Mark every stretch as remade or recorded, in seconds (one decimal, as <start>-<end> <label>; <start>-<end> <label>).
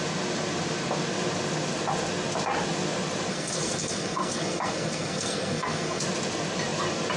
0.0-3.3 recorded; 3.3-6.0 remade; 6.0-7.2 recorded